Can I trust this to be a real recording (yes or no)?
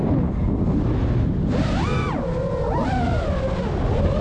yes